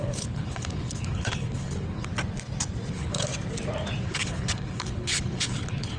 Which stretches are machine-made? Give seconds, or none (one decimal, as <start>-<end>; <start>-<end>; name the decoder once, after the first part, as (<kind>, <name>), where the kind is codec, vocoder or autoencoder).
0.0-2.1 (codec, HILCodec); 2.9-3.3; 4.0-6.0